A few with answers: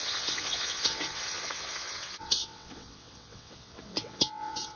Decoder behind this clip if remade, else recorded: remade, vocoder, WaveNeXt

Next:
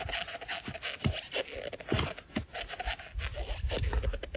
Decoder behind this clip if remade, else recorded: recorded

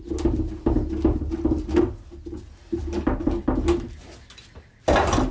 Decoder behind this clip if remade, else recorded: recorded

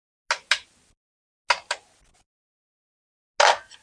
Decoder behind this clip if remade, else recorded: recorded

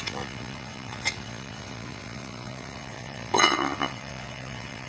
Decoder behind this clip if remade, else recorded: remade, vocoder, WaveNeXt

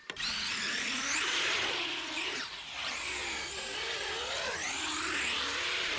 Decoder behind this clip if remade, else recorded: recorded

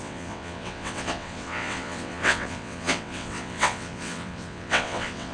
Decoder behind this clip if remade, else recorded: remade, vocoder, WaveNeXt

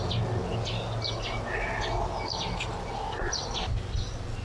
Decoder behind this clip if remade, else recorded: recorded